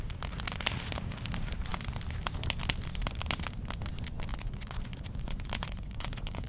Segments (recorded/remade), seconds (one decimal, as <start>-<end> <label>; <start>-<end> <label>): 0.0-4.3 recorded; 4.3-6.5 remade